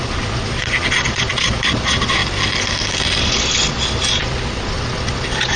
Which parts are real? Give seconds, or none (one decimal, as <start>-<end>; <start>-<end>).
2.2-3.2